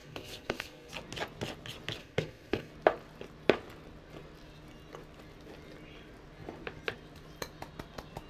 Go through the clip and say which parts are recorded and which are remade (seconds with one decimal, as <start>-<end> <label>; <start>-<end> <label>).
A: 0.0-0.9 remade; 0.9-2.0 recorded; 2.0-2.7 remade; 2.7-8.3 recorded

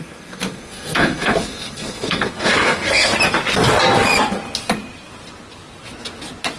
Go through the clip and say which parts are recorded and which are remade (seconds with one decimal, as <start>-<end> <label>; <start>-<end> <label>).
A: 0.0-3.1 remade; 3.1-6.6 recorded

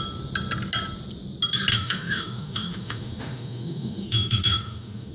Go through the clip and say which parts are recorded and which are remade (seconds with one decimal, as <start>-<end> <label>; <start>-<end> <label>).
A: 0.0-1.7 recorded; 1.7-5.1 remade

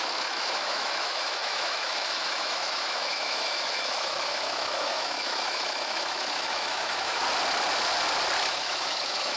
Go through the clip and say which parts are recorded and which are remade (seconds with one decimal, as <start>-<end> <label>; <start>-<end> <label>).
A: 0.0-7.2 remade; 7.2-8.5 recorded; 8.5-9.4 remade